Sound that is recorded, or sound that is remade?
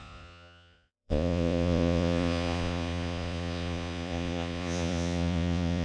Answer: remade